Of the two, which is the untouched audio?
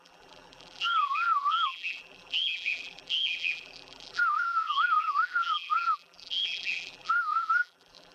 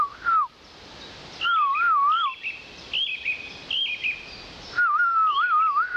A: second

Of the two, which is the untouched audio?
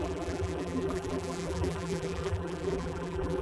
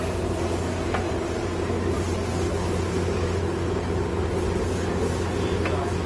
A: second